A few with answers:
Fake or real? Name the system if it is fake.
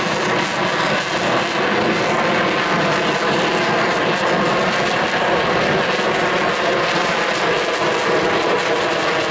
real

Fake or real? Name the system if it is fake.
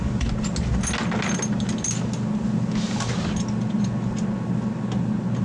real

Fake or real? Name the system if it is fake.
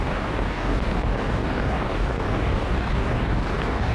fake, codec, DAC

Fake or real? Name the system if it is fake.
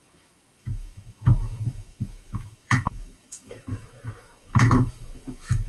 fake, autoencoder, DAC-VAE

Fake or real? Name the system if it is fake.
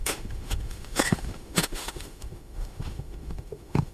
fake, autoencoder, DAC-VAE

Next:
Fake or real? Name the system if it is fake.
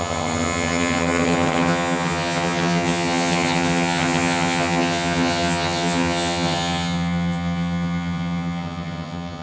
fake, vocoder, HiFi-GAN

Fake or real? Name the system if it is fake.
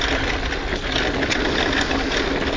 real